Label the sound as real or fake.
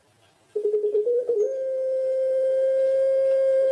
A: real